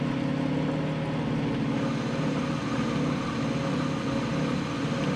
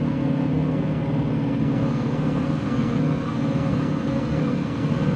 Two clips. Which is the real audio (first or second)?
first